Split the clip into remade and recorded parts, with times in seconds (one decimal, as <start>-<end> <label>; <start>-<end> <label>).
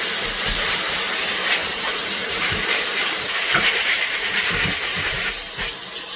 0.0-1.6 recorded; 1.6-5.3 remade; 5.3-6.2 recorded